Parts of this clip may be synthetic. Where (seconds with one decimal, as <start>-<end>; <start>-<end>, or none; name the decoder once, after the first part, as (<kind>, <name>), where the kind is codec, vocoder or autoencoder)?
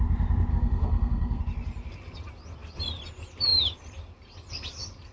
0.5-1.4 (codec, SNAC)